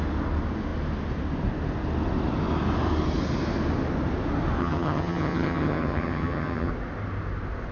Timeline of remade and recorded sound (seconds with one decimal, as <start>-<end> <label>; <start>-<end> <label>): 0.0-4.6 recorded; 4.6-6.7 remade; 6.7-7.7 recorded